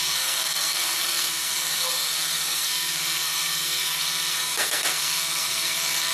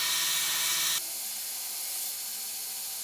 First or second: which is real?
second